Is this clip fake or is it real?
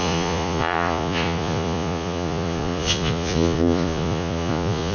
fake